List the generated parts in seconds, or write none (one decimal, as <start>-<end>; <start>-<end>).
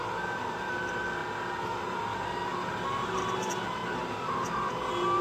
0.0-1.2; 2.7-3.8